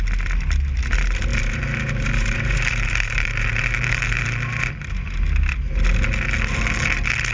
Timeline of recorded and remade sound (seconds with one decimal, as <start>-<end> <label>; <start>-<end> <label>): 0.0-1.3 recorded; 1.3-4.7 remade; 4.7-7.3 recorded